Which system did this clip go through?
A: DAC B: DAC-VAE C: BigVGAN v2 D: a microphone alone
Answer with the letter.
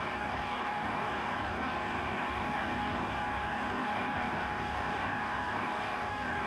A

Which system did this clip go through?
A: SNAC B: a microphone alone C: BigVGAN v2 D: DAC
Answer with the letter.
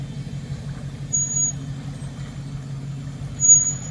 B